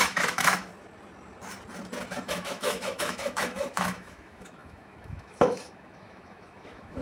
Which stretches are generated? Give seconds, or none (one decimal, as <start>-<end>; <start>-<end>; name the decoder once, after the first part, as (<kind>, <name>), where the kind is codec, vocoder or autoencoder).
0.0-0.7 (autoencoder, DAC-VAE); 2.2-7.0

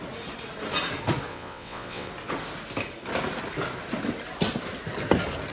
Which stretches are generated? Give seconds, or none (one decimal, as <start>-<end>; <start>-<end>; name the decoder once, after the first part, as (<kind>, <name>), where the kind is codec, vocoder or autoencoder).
1.3-2.1 (vocoder, WaveNeXt)

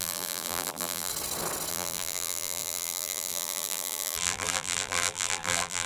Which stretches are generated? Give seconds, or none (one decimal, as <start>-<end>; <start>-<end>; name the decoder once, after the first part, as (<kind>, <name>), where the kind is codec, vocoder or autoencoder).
0.0-1.1 (vocoder, BigVGAN v2); 1.7-5.9

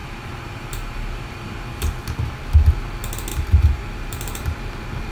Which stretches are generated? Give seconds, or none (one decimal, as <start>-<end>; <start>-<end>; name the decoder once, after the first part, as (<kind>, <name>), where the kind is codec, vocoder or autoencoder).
0.0-2.0 (vocoder, BigVGAN v2); 3.3-4.6

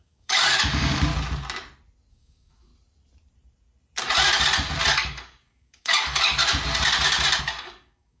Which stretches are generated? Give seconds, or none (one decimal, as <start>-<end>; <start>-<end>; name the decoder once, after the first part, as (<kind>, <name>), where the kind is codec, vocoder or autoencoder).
0.0-1.1 (codec, DAC); 2.1-2.7; 4.9-6.4; 7.4-8.2